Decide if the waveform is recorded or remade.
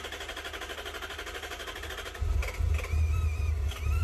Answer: recorded